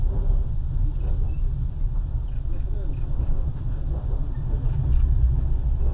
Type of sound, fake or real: real